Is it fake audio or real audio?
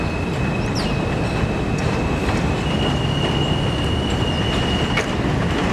real